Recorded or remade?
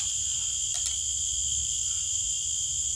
recorded